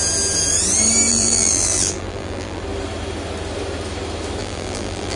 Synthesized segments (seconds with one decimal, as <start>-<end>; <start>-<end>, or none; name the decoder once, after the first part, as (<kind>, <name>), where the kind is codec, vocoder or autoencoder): 1.1-2.6 (vocoder, BigVGAN v2); 4.4-5.2